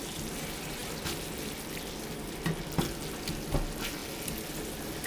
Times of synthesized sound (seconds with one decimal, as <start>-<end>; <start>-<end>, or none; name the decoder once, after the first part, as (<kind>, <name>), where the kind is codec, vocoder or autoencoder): none